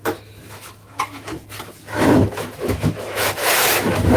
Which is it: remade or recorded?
remade